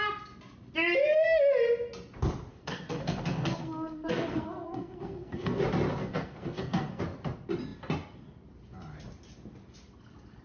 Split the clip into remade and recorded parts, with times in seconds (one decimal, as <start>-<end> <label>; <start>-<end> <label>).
0.0-2.5 recorded; 2.5-5.6 remade; 5.6-6.0 recorded; 6.0-7.0 remade; 7.0-10.4 recorded